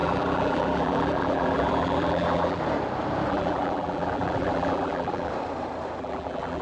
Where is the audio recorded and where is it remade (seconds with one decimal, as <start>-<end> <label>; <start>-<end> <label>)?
0.0-2.6 remade; 2.6-3.3 recorded; 3.3-5.3 remade; 5.3-6.0 recorded; 6.0-6.6 remade